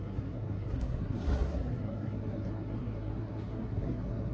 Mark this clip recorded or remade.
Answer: remade